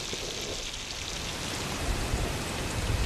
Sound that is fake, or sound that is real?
real